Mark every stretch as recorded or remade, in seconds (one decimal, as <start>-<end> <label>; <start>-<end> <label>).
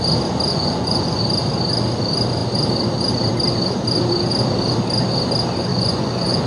0.0-0.5 recorded; 0.5-1.2 remade; 1.2-5.7 recorded; 5.7-6.5 remade